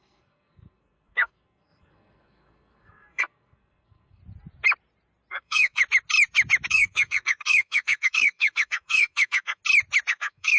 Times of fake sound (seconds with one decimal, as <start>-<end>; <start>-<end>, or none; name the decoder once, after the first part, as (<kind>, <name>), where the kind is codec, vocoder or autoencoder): 0.0-4.2 (codec, SNAC); 5.3-5.8; 6.7-9.6; 10.1-10.6